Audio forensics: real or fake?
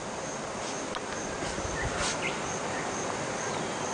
real